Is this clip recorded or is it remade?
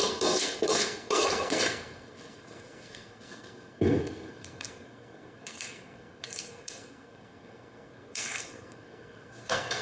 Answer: remade